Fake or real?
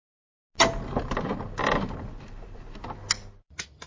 real